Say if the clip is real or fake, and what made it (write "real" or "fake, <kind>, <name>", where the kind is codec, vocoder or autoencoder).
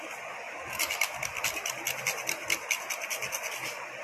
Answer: real